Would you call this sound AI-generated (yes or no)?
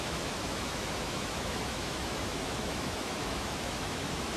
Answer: yes